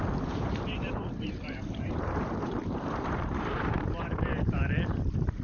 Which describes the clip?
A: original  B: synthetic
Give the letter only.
B